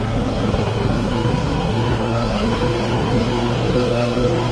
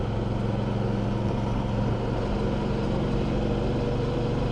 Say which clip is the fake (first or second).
first